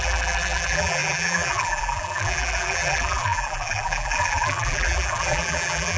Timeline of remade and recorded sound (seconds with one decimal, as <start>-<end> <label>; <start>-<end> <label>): 0.0-6.0 remade